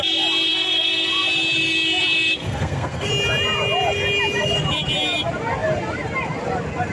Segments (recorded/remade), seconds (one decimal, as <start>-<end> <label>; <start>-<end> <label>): 0.0-0.5 recorded; 0.5-1.1 remade; 1.1-2.4 recorded; 2.4-3.1 remade; 3.1-6.9 recorded